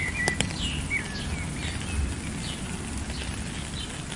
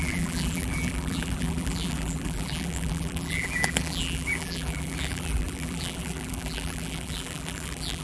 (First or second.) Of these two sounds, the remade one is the second